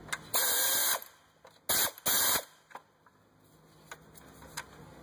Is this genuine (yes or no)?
yes